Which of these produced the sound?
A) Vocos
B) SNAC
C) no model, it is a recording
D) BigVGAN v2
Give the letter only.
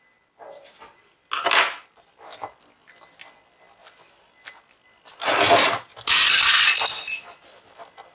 C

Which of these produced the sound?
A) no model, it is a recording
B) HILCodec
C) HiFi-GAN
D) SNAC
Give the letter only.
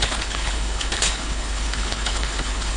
B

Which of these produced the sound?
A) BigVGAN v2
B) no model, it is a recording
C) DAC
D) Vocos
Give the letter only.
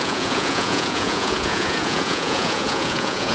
D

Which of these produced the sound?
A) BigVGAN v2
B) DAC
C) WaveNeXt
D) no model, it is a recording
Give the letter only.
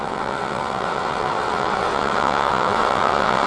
C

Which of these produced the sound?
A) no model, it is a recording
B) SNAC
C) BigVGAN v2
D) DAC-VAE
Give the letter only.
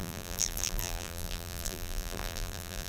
C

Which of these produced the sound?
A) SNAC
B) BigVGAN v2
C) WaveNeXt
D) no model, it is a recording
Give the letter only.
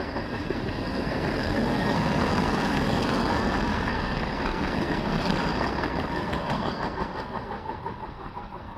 A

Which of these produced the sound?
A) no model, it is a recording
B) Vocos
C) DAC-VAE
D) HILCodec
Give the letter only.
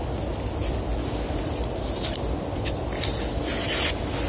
A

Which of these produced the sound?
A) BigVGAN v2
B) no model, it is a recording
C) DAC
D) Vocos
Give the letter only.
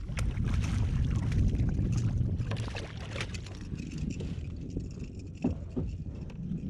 B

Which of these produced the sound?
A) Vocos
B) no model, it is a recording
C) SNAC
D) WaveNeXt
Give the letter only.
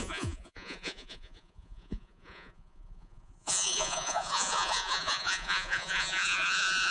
A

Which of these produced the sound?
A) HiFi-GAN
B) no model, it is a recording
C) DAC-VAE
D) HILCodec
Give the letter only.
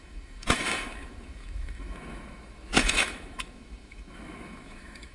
C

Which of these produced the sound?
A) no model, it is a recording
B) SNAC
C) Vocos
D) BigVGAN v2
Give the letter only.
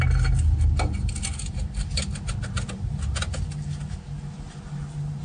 A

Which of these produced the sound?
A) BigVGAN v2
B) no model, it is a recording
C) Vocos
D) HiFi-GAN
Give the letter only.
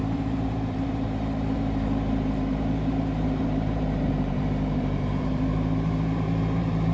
A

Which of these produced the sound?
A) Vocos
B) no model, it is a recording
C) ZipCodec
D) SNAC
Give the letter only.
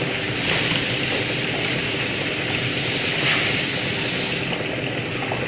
B